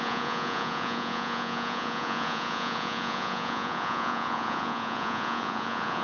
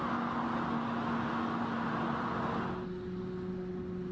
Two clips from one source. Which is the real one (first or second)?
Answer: second